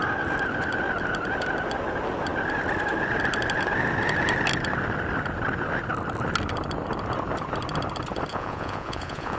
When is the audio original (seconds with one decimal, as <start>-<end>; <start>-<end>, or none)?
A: 0.0-8.3